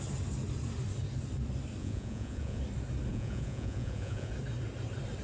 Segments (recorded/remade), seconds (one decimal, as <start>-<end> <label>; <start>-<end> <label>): 0.0-1.8 recorded; 1.8-2.6 remade; 2.6-3.1 recorded; 3.1-4.3 remade; 4.3-5.2 recorded